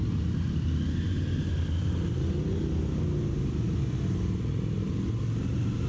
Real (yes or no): yes